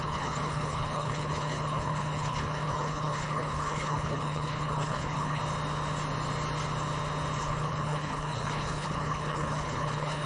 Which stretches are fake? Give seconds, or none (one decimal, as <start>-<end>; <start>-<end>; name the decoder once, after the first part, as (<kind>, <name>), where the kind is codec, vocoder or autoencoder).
0.0-5.4 (codec, HILCodec); 7.4-10.3